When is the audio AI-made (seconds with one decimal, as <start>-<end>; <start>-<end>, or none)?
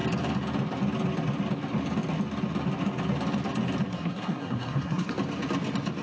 3.9-5.1